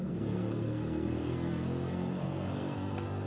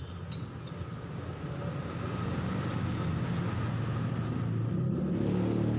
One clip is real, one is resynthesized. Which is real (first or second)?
second